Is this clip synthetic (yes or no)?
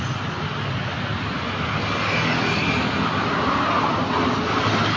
no